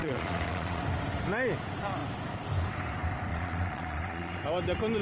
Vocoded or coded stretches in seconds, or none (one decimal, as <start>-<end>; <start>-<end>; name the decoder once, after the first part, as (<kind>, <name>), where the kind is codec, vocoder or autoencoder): 0.0-0.8 (vocoder, Vocos); 3.3-4.4